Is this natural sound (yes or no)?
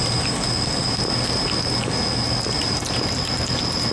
yes